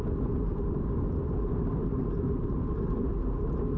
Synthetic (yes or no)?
no